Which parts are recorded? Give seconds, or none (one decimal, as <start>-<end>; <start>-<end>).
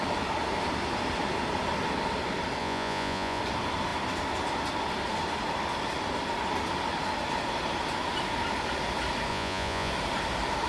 0.0-2.6; 3.4-9.3; 9.9-10.7